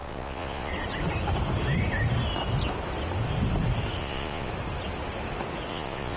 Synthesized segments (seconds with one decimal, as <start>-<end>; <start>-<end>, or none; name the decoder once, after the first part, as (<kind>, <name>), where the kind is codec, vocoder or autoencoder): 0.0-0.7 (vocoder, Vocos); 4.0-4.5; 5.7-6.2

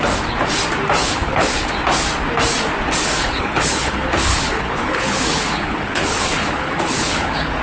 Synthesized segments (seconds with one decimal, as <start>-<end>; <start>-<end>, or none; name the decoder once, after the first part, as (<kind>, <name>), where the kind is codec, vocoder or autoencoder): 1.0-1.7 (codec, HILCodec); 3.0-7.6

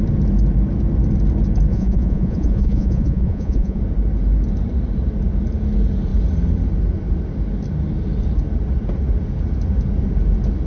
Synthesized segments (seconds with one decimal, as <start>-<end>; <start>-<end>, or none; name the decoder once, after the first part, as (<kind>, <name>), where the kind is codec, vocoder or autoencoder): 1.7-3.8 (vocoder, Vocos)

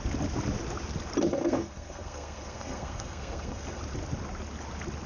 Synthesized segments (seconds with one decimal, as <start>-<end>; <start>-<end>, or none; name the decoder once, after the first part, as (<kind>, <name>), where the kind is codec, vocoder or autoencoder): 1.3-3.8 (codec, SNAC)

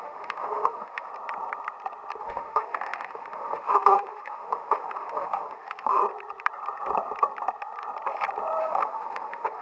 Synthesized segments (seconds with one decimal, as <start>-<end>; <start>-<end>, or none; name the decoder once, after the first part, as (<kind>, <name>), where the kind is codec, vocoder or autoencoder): 0.0-1.1 (autoencoder, DAC-VAE); 2.2-6.0; 8.6-9.6

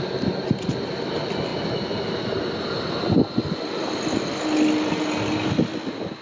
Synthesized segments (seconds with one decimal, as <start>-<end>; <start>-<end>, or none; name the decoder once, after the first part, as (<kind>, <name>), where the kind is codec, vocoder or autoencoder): none